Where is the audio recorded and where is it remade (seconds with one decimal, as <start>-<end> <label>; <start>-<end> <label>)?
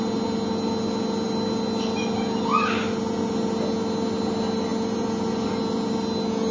0.0-6.5 recorded